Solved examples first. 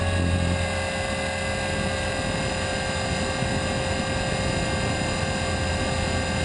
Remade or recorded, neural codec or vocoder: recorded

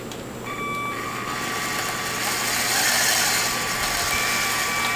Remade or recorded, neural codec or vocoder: recorded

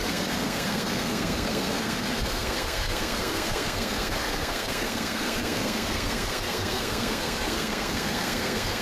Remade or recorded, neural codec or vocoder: remade, codec, SNAC